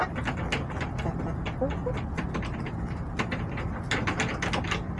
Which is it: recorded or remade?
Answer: recorded